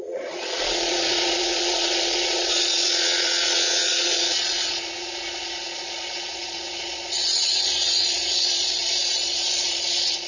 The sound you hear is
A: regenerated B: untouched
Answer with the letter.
A